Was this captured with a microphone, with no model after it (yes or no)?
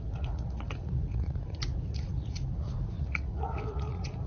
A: no